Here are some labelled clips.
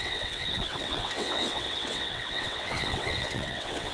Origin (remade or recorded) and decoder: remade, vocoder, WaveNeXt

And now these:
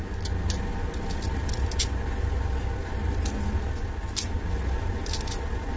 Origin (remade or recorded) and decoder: recorded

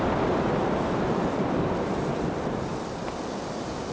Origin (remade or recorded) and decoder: recorded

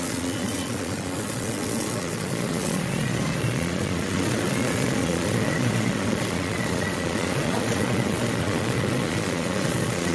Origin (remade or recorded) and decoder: remade, vocoder, Vocos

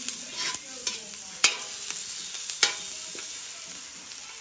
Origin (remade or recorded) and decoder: recorded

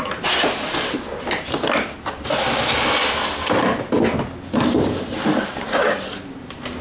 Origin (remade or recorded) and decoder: recorded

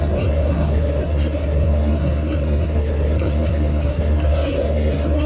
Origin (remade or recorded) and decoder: remade, codec, SNAC